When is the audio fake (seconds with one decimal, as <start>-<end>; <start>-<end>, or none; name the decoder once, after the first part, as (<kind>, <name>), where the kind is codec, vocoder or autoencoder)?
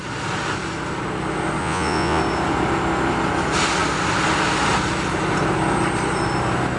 1.6-2.2 (vocoder, Vocos)